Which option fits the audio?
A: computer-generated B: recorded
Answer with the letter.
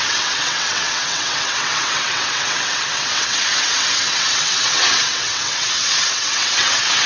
A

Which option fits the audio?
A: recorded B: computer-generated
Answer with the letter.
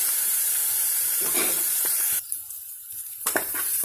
B